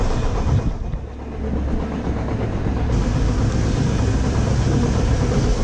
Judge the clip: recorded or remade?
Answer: recorded